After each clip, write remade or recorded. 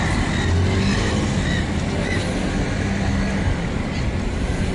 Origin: recorded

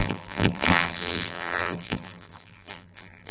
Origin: remade